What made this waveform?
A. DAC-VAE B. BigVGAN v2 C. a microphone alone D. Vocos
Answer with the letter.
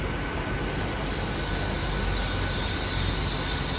C